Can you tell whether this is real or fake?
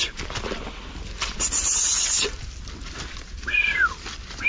real